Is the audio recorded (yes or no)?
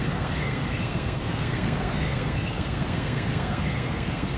no